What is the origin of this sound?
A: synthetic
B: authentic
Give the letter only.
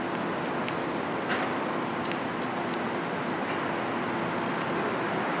B